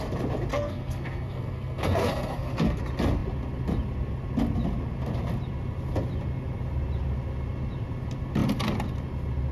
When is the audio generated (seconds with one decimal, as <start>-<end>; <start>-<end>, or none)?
0.5-2.8

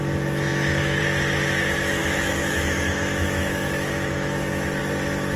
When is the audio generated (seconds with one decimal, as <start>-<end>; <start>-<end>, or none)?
0.5-1.0; 2.0-4.8

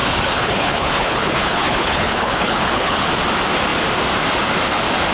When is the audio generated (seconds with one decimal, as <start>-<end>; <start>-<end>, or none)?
0.0-3.1

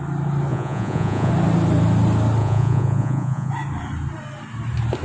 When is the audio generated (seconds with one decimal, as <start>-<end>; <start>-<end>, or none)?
0.5-1.3; 2.4-3.5

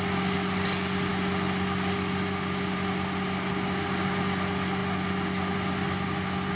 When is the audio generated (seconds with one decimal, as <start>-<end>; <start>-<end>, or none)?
none

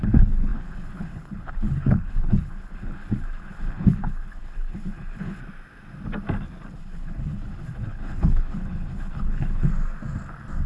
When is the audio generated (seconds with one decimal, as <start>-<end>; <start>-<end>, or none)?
0.0-5.4; 6.8-9.7

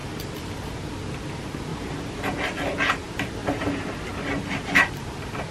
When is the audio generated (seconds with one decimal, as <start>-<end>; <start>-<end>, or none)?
1.7-2.2; 3.4-4.1